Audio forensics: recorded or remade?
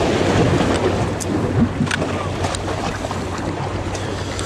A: recorded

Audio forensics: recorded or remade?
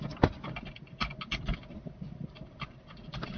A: recorded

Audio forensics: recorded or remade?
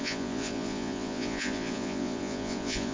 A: remade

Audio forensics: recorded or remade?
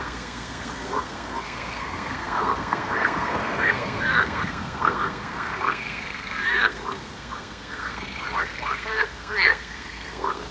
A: remade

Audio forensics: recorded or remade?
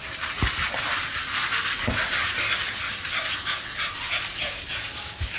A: recorded